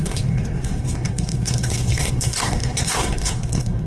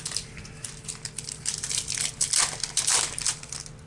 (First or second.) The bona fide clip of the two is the second